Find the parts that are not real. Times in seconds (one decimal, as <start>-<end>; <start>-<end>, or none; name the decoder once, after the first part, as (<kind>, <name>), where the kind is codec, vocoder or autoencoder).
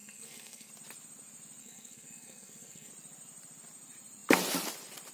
0.0-0.7 (codec, SNAC); 1.6-2.9